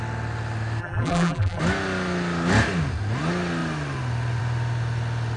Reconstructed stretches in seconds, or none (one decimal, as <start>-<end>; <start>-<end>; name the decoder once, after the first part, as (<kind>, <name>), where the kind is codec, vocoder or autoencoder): 0.8-1.6 (vocoder, BigVGAN v2)